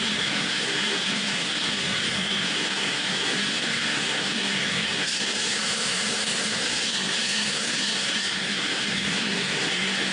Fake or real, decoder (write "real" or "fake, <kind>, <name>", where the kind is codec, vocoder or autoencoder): fake, codec, SNAC